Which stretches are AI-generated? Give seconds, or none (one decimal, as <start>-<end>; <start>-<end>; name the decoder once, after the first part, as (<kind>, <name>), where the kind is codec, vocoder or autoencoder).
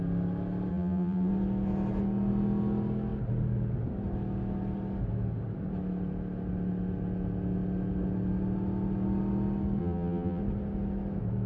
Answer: 0.7-1.3 (vocoder, BigVGAN v2); 9.8-10.4